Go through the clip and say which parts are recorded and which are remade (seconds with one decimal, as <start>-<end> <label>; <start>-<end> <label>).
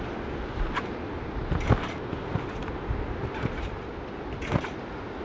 0.0-5.2 recorded